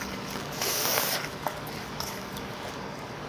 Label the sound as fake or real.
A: fake